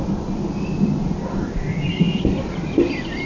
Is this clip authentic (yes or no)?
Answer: yes